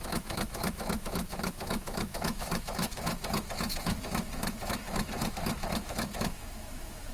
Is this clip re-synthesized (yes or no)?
yes